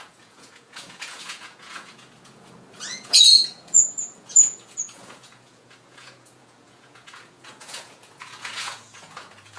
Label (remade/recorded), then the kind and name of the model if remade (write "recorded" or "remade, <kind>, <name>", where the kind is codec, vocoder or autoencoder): remade, vocoder, Vocos